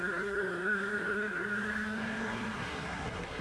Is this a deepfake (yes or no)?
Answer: yes